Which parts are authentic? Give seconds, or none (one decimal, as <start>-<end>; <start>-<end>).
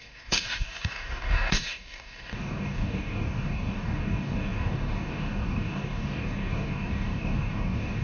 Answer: none